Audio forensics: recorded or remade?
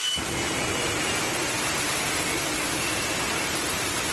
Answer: recorded